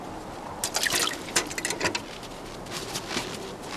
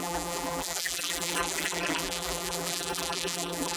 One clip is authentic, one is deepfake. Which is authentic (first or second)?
first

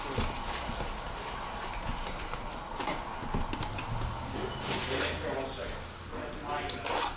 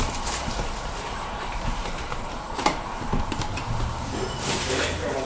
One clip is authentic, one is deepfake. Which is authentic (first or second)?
first